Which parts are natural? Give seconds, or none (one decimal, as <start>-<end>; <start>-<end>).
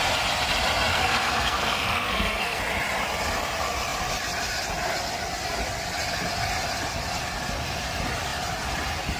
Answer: 0.0-0.9; 2.6-9.2